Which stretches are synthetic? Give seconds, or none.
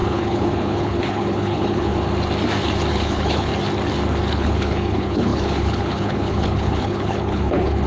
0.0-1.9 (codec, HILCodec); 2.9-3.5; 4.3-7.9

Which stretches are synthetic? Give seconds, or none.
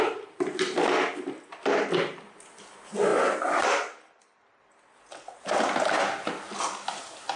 none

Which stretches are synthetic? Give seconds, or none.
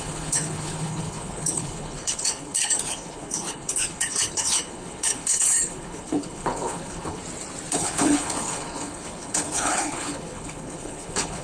0.0-7.2 (codec, HILCodec); 7.7-11.4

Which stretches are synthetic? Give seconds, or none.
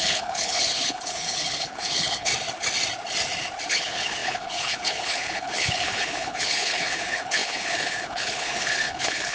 0.0-2.3 (codec, HILCodec); 3.7-9.3